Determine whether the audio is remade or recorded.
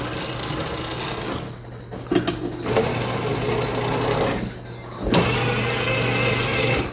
recorded